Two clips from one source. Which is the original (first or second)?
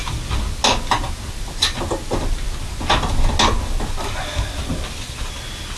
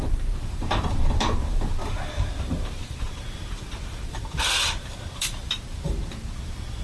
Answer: first